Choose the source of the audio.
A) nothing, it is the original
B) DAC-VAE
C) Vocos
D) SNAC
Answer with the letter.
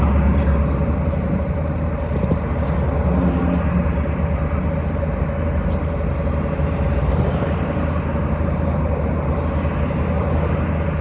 A